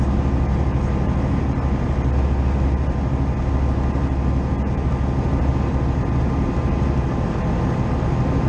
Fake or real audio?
real